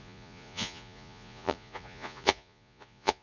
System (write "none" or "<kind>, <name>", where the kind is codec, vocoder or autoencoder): vocoder, Vocos